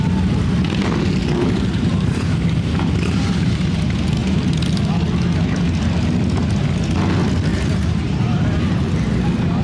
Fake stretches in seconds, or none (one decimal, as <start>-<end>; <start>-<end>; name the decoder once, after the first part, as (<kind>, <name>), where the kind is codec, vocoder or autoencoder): 1.2-3.6 (vocoder, BigVGAN v2); 4.2-4.7; 7.5-8.4

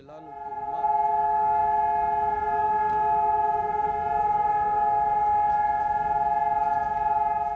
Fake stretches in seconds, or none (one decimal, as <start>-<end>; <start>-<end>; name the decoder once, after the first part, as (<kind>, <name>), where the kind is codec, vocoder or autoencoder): none

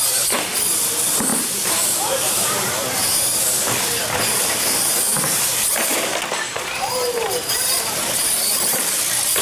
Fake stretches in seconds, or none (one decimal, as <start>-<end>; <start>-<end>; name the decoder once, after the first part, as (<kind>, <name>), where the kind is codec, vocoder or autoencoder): 1.3-2.7 (vocoder, BigVGAN v2); 6.5-8.8

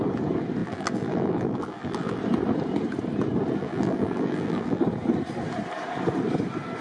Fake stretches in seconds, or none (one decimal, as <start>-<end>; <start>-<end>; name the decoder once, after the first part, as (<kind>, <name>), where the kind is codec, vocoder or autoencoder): 0.6-2.2 (vocoder, BigVGAN v2); 3.6-4.8

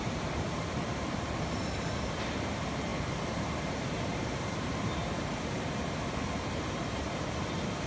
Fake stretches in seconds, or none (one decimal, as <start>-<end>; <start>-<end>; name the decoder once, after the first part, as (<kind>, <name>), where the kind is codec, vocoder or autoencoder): 0.0-7.9 (vocoder, BigVGAN v2)